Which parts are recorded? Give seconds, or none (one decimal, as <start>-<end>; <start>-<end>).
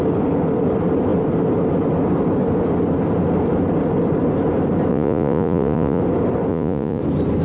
0.0-4.9; 6.0-6.5; 7.0-7.4